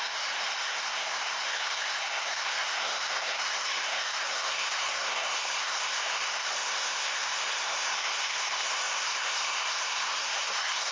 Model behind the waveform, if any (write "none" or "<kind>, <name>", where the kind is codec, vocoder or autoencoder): codec, SNAC